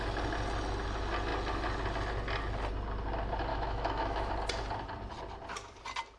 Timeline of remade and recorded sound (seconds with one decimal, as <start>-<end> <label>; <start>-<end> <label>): 0.0-3.5 recorded; 3.5-4.3 remade; 4.3-6.2 recorded